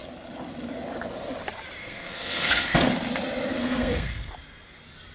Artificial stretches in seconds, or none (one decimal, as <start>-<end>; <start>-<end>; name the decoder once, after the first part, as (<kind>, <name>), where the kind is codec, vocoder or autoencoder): 1.8-2.9 (codec, SNAC); 3.5-4.3

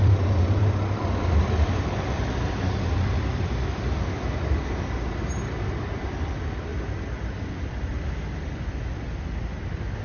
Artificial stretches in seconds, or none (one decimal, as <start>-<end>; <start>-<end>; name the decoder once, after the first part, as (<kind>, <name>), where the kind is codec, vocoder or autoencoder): 0.0-7.9 (vocoder, BigVGAN v2); 8.9-10.0

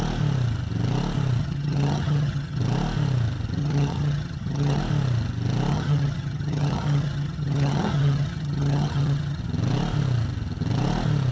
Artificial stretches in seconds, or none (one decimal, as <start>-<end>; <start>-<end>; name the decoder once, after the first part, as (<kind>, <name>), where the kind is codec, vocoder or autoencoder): 1.4-2.6 (vocoder, HiFi-GAN); 3.6-4.8; 5.7-9.4

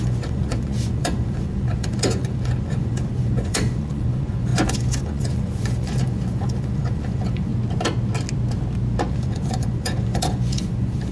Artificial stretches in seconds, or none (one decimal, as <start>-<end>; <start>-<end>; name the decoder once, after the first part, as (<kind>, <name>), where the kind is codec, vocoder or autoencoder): 0.0-7.5 (vocoder, Vocos); 9.1-11.1